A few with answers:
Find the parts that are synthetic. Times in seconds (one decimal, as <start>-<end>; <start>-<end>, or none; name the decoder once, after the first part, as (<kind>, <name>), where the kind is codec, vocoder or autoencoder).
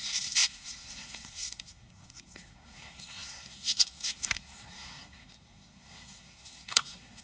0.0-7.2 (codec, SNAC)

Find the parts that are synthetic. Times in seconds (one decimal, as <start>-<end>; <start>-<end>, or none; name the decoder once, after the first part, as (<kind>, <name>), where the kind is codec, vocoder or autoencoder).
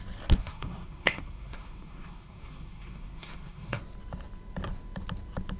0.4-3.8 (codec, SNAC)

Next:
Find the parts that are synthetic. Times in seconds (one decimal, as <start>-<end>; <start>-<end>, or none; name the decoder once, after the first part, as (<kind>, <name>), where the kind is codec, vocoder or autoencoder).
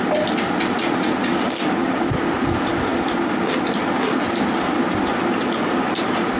none